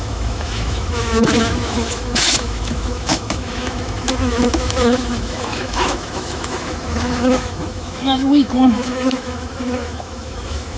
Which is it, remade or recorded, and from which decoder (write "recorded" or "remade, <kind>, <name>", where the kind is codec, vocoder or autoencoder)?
remade, autoencoder, DAC-VAE